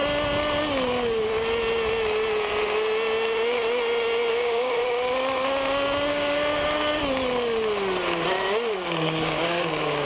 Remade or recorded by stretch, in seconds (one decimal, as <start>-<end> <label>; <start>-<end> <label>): 0.0-4.3 recorded; 4.3-4.8 remade; 4.8-6.1 recorded; 6.1-7.0 remade; 7.0-8.7 recorded; 8.7-10.0 remade